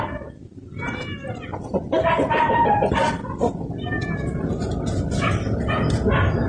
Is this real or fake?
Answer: real